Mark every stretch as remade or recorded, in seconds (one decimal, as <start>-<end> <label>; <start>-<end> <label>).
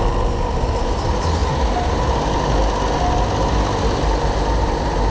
0.0-5.1 recorded